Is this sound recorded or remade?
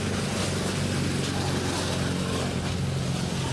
recorded